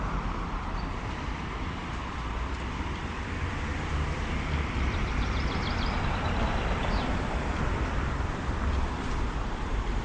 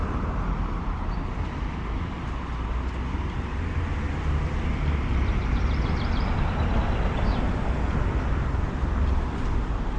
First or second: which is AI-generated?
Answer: first